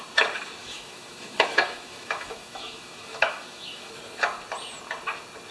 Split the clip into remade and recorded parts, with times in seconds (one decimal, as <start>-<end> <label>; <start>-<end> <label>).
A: 0.0-0.6 recorded; 0.6-3.9 remade; 3.9-5.5 recorded